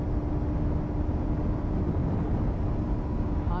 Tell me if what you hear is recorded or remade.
recorded